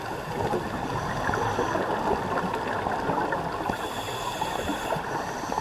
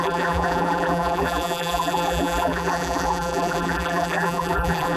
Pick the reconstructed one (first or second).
second